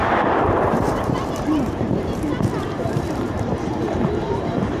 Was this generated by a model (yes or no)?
yes